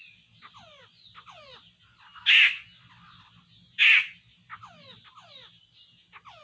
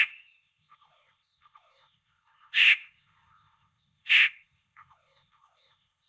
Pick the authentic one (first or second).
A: first